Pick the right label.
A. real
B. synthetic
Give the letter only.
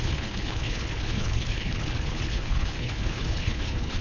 B